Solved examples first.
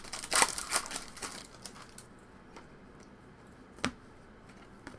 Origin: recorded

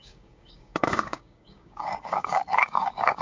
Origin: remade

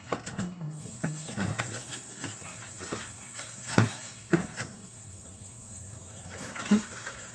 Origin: remade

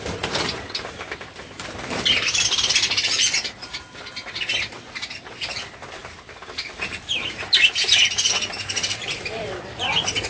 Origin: remade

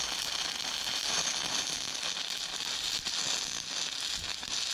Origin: recorded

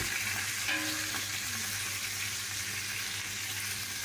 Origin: recorded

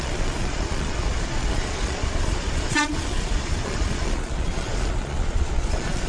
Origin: remade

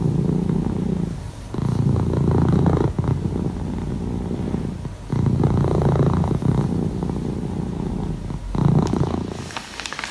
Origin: recorded